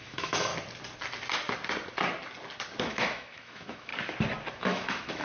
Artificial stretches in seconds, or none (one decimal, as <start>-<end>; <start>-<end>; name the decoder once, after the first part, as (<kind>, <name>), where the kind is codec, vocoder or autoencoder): 0.0-0.5 (autoencoder, DAC-VAE); 2.8-3.9; 4.5-5.2